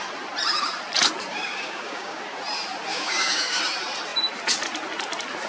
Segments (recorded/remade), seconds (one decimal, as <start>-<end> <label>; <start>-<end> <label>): 0.0-1.3 recorded; 1.3-2.2 remade; 2.2-2.9 recorded; 2.9-3.6 remade; 3.6-5.5 recorded